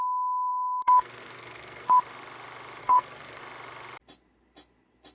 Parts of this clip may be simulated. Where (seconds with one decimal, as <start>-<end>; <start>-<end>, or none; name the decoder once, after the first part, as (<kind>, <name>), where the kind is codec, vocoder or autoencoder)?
0.5-2.0 (codec, SNAC); 2.8-3.4